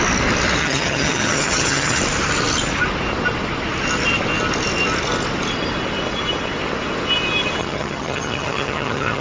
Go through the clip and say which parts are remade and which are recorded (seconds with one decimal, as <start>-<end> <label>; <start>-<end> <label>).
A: 0.0-0.6 recorded; 0.6-2.0 remade; 2.0-7.6 recorded; 7.6-9.2 remade